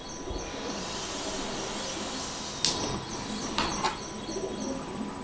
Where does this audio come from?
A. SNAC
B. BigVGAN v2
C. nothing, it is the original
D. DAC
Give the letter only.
C